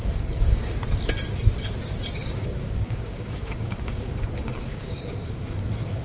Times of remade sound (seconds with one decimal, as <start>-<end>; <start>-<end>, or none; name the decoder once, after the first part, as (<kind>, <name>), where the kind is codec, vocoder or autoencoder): 0.0-0.8 (codec, DAC); 2.2-6.0